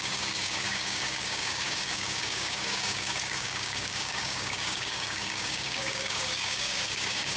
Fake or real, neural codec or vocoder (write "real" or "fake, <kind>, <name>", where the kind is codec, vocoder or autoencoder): fake, codec, DAC